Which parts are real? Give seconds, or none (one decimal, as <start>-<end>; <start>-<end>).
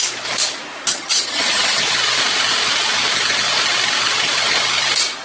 0.0-0.9; 1.8-5.2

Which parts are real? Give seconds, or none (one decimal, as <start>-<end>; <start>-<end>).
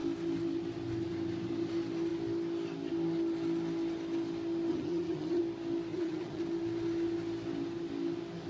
0.0-4.7; 5.4-5.9; 6.4-8.5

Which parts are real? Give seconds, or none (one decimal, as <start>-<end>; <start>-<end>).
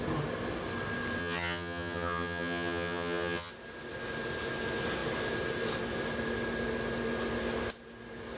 0.0-1.2; 3.5-8.4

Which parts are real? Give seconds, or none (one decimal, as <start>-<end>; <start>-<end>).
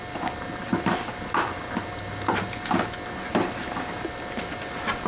0.0-5.1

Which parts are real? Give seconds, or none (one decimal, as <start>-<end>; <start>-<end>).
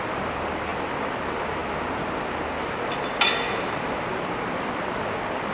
0.0-5.5